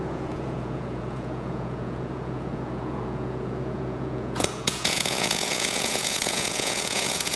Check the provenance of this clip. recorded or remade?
remade